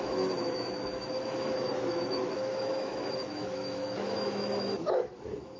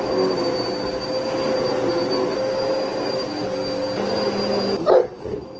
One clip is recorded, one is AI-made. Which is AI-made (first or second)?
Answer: first